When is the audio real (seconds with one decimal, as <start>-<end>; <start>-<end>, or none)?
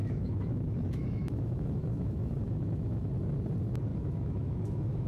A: 3.1-3.9